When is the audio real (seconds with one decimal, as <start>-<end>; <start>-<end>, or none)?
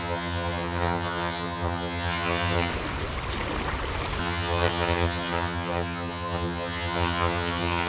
2.7-4.2